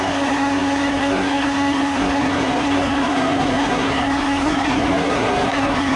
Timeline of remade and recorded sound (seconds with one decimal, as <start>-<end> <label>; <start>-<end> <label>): 0.0-6.0 remade